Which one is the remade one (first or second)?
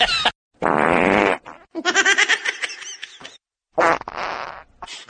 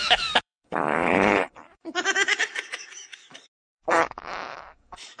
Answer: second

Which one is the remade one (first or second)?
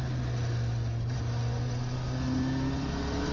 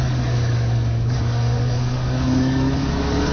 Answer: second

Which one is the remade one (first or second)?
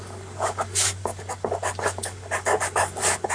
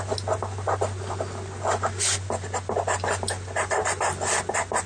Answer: first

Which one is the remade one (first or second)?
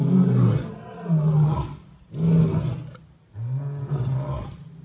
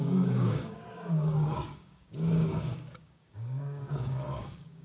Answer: second